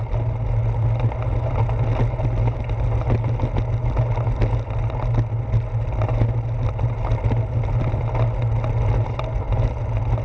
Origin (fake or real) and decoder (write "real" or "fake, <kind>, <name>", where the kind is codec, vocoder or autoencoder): real